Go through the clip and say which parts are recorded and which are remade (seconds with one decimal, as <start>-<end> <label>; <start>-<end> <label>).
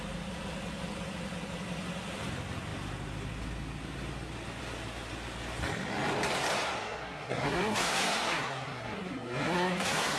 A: 0.0-6.8 recorded; 6.8-10.2 remade